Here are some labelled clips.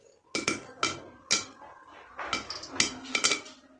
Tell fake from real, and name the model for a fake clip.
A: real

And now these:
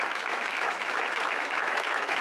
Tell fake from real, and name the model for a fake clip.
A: fake, autoencoder, DAC-VAE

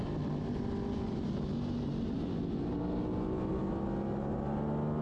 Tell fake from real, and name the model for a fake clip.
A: real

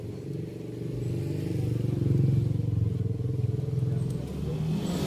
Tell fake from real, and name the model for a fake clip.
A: real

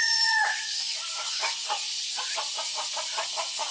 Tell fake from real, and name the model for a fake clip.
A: fake, vocoder, Vocos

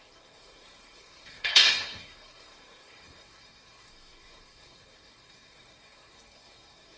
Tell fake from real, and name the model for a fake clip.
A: fake, codec, SNAC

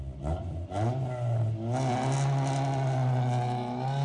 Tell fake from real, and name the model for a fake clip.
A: real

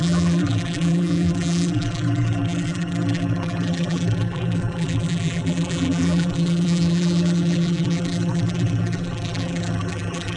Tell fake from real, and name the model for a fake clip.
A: fake, vocoder, BigVGAN v2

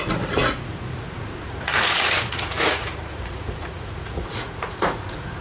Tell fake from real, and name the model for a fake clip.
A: fake, vocoder, Vocos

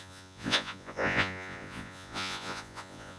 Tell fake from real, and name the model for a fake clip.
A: fake, vocoder, Vocos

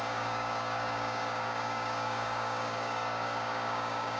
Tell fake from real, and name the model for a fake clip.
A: fake, codec, DAC